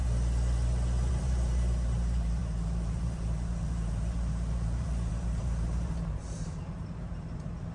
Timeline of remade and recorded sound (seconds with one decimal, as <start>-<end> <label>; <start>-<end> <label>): 0.0-1.1 recorded; 1.1-7.7 remade